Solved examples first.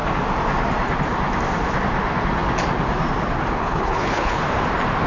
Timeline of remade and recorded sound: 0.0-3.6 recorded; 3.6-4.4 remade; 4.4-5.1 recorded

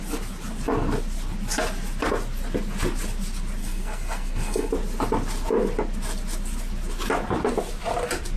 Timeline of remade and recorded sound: 0.0-3.6 recorded; 3.6-4.7 remade; 4.7-8.4 recorded

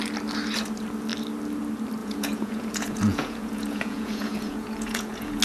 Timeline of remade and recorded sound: 0.0-2.0 recorded; 2.0-5.4 remade

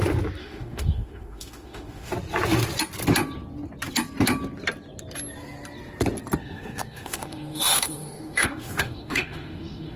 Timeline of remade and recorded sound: 0.0-0.4 recorded; 0.4-2.1 remade; 2.1-6.4 recorded; 6.4-10.0 remade

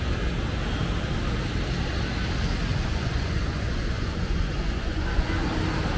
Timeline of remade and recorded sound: 0.0-2.7 recorded; 2.7-5.5 remade; 5.5-6.0 recorded

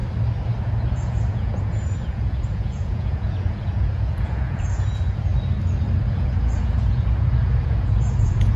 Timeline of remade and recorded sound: 0.0-0.6 recorded; 0.6-5.3 remade; 5.3-6.0 recorded; 6.0-8.6 remade

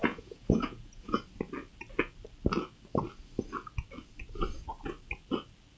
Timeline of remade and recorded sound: 0.0-1.2 remade; 1.2-5.8 recorded

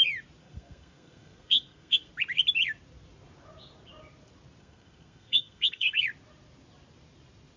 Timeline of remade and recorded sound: 0.0-0.4 recorded; 0.4-2.1 remade; 2.1-4.6 recorded; 4.6-6.0 remade; 6.0-7.6 recorded